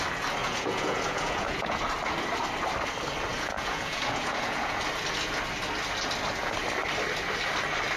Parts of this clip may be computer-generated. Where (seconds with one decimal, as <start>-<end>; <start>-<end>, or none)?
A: 0.4-1.8; 3.3-4.8